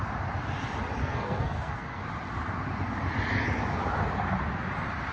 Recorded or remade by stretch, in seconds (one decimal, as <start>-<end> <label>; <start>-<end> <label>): 0.0-1.0 recorded; 1.0-2.0 remade; 2.0-5.1 recorded